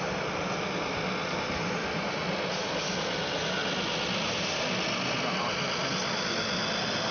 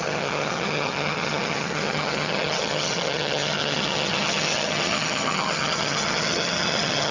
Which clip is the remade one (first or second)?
second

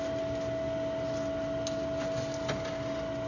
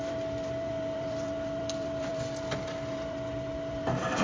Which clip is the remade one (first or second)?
second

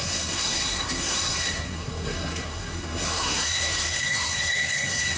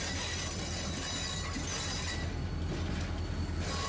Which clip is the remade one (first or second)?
first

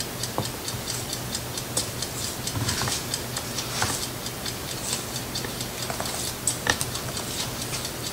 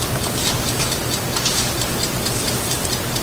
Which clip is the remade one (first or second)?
second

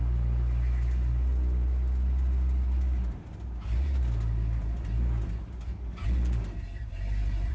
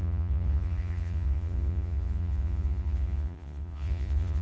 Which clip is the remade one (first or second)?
second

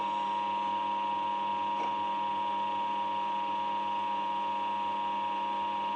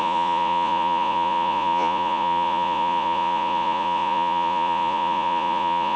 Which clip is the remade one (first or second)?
second